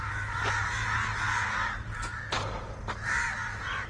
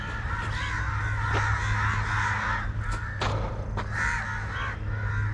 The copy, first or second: first